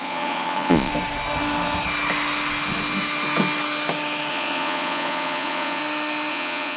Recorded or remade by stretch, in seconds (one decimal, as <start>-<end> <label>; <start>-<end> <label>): 0.0-0.9 remade; 0.9-4.3 recorded; 4.3-5.8 remade; 5.8-6.3 recorded; 6.3-6.8 remade

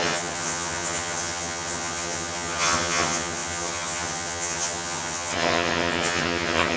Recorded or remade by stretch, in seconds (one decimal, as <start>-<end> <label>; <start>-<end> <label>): 0.0-6.8 remade